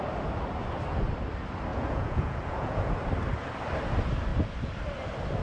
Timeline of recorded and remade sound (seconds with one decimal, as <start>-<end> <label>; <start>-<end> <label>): 0.0-1.7 recorded; 1.7-2.8 remade; 2.8-5.4 recorded